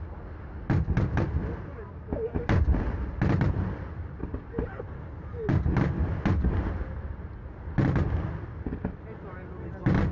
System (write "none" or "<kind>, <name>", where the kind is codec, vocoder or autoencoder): none